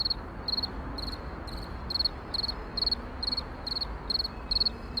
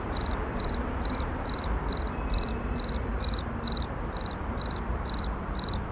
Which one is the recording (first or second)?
first